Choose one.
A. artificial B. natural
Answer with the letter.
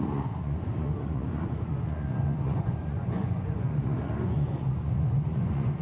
A